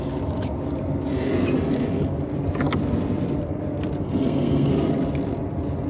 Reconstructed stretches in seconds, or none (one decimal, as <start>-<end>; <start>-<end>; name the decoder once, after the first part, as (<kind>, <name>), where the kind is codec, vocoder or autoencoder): 4.0-4.7 (codec, SNAC)